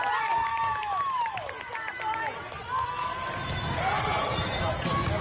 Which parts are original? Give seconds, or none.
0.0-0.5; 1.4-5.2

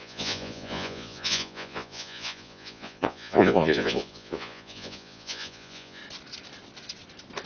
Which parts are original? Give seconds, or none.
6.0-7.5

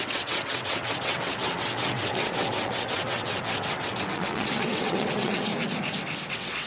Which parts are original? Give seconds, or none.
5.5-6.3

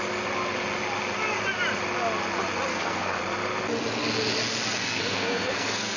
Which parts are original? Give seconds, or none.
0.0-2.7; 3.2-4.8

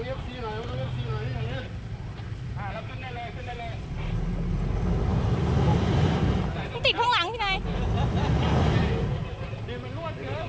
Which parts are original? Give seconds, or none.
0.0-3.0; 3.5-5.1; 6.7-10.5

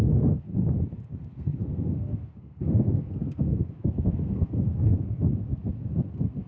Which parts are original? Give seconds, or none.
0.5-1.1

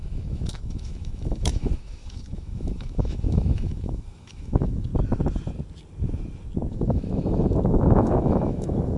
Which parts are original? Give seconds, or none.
4.9-6.7

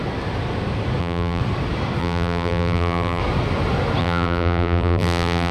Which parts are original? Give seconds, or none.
0.0-1.0; 1.4-2.0; 3.2-4.0